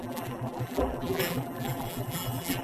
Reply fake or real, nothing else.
fake